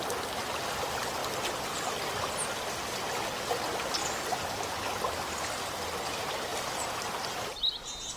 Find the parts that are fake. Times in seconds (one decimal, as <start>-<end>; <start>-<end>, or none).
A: none